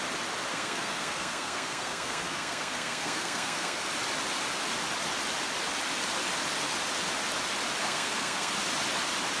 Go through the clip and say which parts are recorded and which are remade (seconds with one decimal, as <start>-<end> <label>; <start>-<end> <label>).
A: 0.0-0.5 recorded; 0.5-3.9 remade; 3.9-7.8 recorded; 7.8-8.5 remade; 8.5-9.4 recorded